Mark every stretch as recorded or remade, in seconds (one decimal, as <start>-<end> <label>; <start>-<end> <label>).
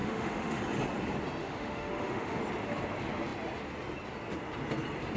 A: 0.0-0.6 remade; 0.6-1.4 recorded; 1.4-2.4 remade; 2.4-5.2 recorded